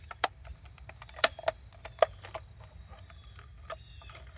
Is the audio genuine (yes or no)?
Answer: yes